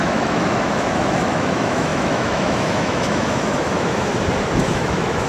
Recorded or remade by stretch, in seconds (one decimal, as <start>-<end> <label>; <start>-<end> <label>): 0.0-4.1 remade; 4.1-4.6 recorded; 4.6-5.3 remade